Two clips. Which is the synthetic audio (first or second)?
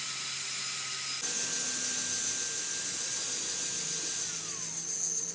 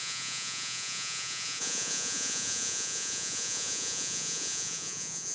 second